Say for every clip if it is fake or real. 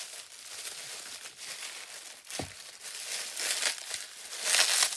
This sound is real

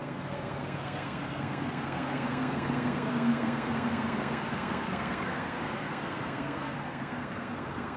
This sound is fake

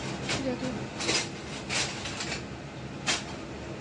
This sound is real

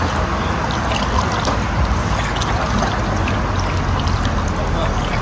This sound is real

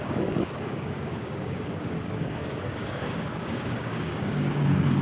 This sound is fake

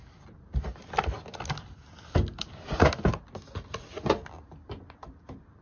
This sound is real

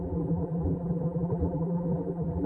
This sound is fake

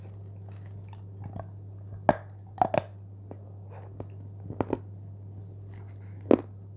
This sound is real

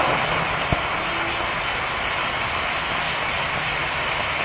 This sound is real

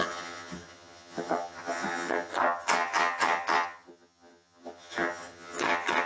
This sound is fake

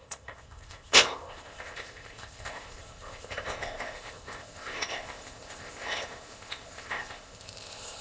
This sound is fake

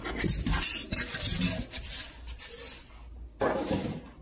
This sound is real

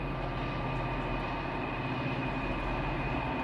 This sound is real